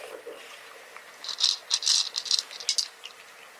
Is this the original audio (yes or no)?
yes